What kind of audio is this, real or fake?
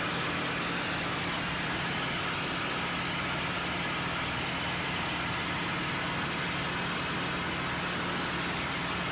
real